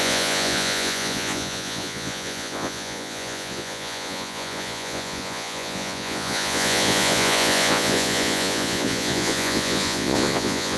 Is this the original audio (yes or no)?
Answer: no